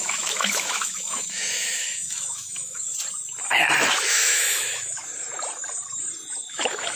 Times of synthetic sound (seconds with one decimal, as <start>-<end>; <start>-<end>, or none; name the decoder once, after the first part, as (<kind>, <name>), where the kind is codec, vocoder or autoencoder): 0.0-2.9 (autoencoder, DAC-VAE); 3.9-5.1; 6.5-7.0